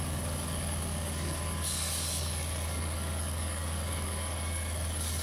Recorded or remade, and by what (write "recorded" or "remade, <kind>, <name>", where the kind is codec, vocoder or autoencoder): remade, codec, DAC